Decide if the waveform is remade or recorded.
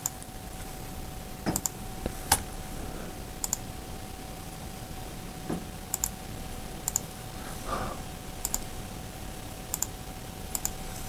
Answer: remade